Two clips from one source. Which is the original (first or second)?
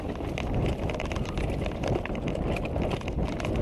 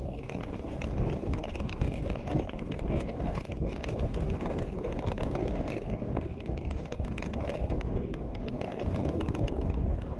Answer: first